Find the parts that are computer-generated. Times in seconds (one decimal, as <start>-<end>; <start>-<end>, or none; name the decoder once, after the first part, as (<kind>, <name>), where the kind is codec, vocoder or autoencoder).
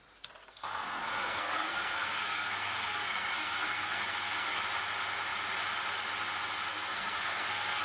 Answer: 0.4-4.6 (codec, SNAC); 6.7-7.8